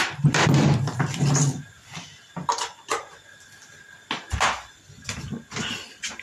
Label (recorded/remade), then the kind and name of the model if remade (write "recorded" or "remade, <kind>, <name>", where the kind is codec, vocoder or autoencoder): recorded